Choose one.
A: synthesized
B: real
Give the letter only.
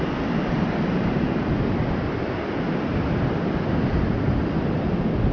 B